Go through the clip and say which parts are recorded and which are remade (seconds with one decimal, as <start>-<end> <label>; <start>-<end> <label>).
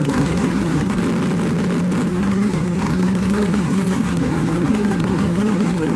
0.0-1.0 remade; 1.0-2.1 recorded; 2.1-6.0 remade